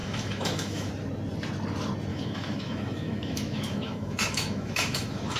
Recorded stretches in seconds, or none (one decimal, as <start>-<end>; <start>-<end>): 0.9-2.1